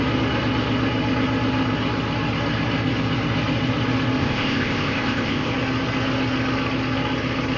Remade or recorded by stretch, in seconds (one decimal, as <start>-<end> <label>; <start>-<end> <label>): 0.0-4.2 recorded; 4.2-5.5 remade; 5.5-7.6 recorded